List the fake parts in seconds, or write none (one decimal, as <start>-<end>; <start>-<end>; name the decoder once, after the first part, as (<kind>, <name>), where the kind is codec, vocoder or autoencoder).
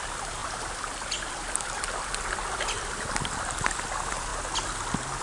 0.0-4.3 (vocoder, BigVGAN v2)